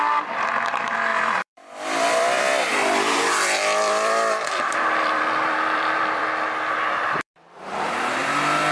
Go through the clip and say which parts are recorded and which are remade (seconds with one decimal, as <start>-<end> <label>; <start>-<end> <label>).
0.0-8.7 remade

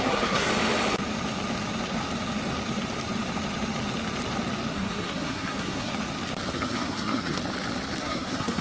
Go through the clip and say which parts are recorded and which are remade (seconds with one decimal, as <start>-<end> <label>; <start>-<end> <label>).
0.0-0.5 remade; 0.5-4.7 recorded; 4.7-5.9 remade; 5.9-6.5 recorded; 6.5-7.4 remade; 7.4-8.0 recorded; 8.0-8.6 remade

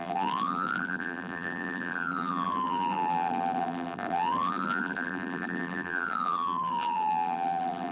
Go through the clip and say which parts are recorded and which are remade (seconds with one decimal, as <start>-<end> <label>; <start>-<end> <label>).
0.0-7.9 remade

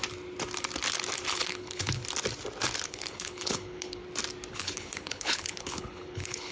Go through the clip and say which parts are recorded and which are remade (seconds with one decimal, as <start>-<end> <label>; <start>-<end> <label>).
0.0-1.3 recorded; 1.3-2.0 remade; 2.0-2.9 recorded; 2.9-4.0 remade; 4.0-4.5 recorded; 4.5-6.5 remade

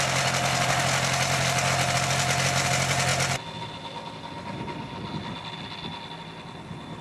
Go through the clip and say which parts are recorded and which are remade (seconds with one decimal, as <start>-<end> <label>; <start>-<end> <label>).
0.0-7.0 recorded

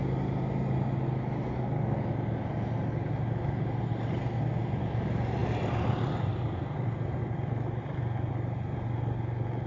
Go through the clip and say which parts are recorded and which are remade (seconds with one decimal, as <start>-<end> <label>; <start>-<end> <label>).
0.0-5.4 recorded; 5.4-8.3 remade; 8.3-9.7 recorded